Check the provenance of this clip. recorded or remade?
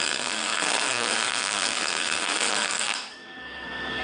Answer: remade